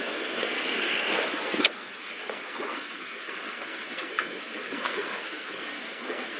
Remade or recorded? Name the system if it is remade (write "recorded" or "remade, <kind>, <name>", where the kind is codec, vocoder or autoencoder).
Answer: remade, codec, SNAC